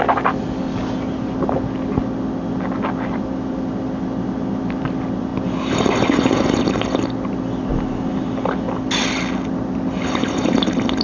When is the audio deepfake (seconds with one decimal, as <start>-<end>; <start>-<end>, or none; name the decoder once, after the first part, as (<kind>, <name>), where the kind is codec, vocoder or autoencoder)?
none